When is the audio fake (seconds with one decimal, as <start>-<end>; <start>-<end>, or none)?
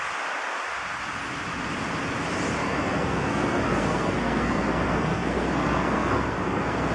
2.6-6.9